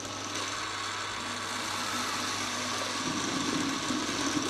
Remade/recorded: recorded